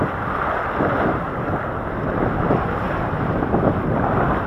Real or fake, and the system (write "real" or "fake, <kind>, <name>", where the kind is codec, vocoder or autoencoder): real